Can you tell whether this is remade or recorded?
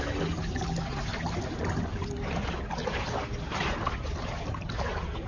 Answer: recorded